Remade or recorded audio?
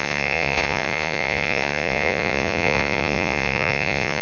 remade